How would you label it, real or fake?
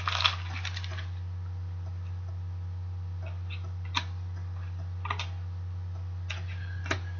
real